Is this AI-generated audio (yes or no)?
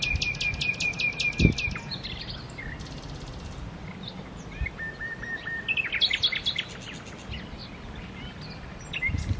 no